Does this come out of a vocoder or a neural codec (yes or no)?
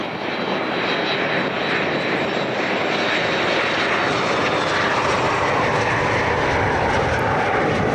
no